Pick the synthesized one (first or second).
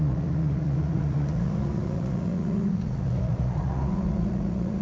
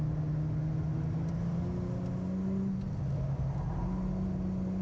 first